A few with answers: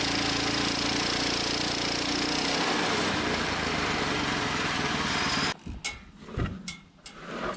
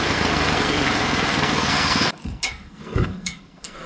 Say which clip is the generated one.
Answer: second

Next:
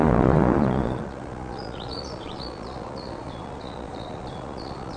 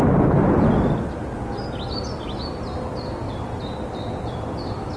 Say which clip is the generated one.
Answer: first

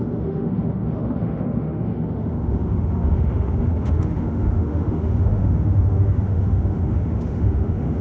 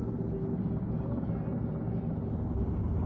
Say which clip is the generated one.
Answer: first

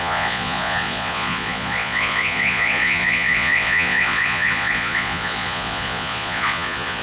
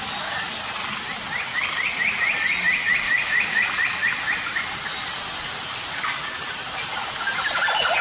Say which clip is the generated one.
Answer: first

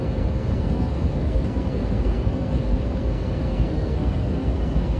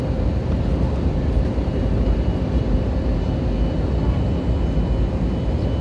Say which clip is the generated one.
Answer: first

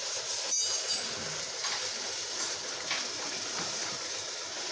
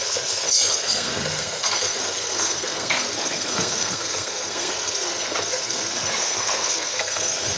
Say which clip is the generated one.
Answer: second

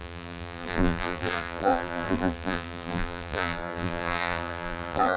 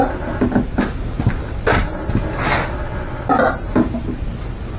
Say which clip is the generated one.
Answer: first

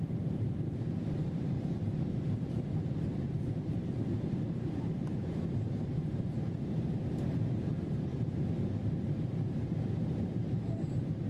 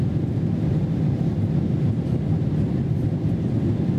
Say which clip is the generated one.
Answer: first